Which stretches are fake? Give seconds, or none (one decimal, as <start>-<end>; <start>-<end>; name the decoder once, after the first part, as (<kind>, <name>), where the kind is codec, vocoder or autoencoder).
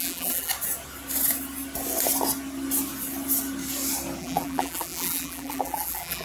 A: 0.0-0.5 (vocoder, BigVGAN v2); 4.2-6.2